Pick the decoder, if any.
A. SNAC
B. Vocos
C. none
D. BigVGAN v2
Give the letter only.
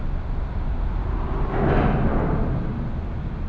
C